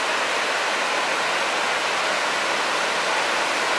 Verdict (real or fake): real